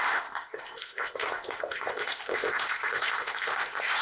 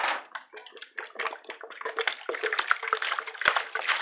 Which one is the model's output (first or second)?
first